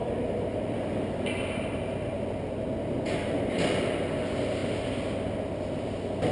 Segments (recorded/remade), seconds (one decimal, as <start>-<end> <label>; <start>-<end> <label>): 0.0-0.7 remade; 0.7-6.3 recorded